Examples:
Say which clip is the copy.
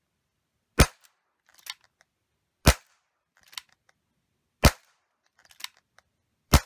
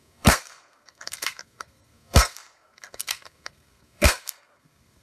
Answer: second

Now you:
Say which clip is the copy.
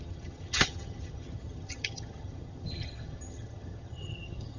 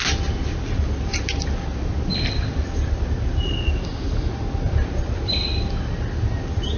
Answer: first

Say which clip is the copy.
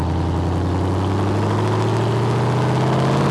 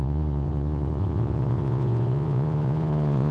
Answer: second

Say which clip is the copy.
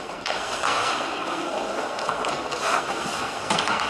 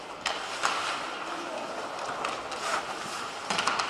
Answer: first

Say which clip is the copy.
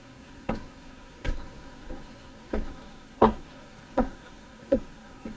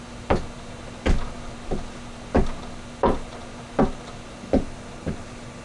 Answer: first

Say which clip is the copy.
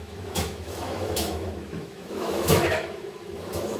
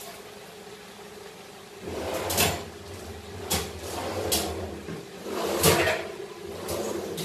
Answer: first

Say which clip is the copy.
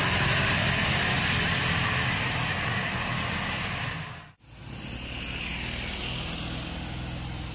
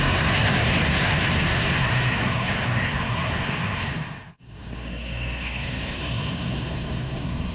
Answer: second